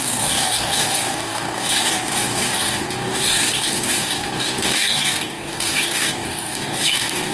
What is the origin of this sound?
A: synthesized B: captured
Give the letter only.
A